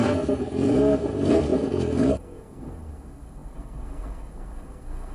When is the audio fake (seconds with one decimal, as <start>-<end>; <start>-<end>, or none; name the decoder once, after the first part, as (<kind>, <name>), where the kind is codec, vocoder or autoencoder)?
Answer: 0.0-5.1 (codec, SNAC)